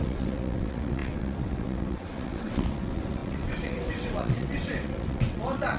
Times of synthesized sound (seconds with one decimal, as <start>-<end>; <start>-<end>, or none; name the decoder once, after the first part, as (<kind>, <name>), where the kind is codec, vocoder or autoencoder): 0.0-5.8 (vocoder, WaveNeXt)